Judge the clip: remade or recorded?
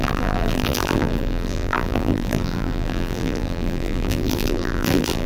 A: remade